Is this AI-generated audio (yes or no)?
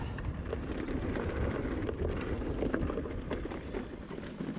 no